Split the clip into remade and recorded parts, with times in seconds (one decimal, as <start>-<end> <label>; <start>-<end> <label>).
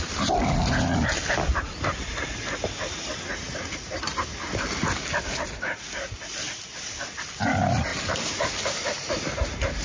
0.0-9.8 recorded